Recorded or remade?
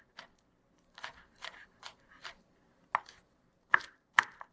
recorded